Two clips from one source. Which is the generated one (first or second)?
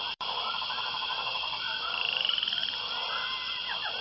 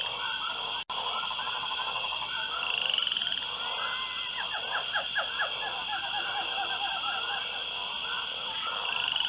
first